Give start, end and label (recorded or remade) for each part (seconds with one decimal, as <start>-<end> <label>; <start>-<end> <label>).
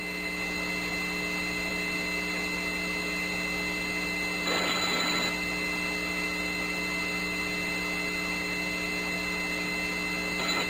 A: 0.0-10.7 recorded